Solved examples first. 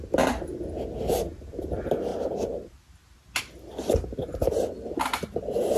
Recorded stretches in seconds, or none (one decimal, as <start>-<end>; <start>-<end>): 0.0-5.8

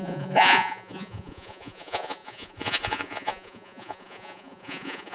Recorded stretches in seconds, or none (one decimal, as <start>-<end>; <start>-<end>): none

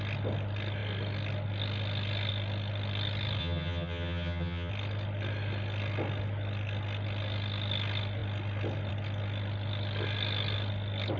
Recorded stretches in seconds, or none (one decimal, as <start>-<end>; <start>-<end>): 0.0-3.4; 4.7-11.2

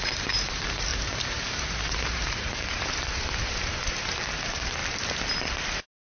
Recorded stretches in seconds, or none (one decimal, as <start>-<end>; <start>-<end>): 0.0-0.9; 4.1-6.0

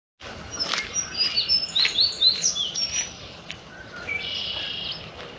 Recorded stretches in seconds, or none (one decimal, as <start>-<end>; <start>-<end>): 0.0-3.7; 4.5-5.4